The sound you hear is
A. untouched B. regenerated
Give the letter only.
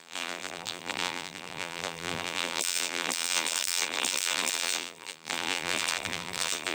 B